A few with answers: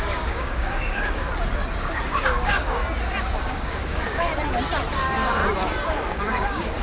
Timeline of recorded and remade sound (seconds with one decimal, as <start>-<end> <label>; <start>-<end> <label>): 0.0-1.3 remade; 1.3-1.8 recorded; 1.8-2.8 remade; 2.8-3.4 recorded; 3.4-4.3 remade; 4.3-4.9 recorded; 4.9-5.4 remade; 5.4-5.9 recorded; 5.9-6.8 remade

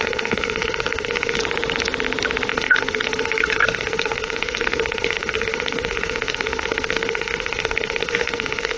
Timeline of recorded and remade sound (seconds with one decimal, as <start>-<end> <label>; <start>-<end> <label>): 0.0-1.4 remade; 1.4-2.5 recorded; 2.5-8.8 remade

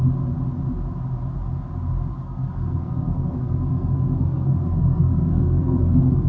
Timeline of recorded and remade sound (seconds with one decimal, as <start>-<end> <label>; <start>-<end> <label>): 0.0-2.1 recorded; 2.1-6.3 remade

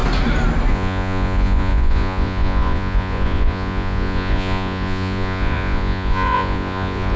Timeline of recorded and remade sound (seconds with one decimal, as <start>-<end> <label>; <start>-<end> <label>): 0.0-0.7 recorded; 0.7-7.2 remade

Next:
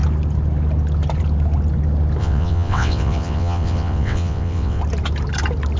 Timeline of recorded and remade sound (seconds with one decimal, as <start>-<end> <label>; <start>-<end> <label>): 0.0-2.2 recorded; 2.2-4.8 remade; 4.8-5.8 recorded

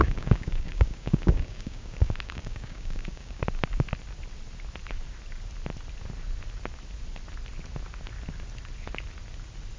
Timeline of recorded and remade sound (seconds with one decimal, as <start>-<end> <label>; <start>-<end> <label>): 0.0-3.4 remade; 3.4-9.8 recorded

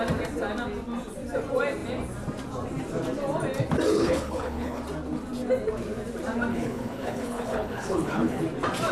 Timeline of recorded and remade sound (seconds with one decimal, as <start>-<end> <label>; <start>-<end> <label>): 0.0-3.9 recorded; 3.9-4.8 remade; 4.8-6.5 recorded; 6.5-8.4 remade; 8.4-8.9 recorded